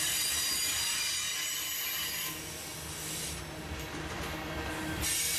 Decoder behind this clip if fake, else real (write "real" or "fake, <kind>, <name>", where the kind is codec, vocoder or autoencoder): real